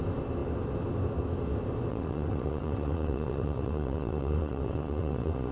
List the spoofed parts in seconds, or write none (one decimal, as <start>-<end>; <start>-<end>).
1.9-5.5